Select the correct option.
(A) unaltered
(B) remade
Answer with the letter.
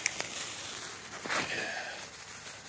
A